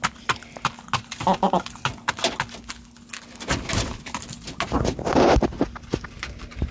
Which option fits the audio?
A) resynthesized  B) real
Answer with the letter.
B